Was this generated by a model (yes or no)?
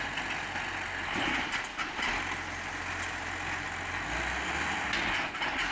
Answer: no